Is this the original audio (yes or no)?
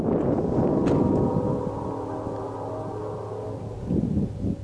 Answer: yes